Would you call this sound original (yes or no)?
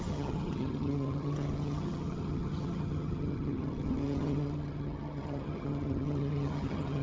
no